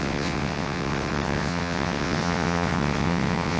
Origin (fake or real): fake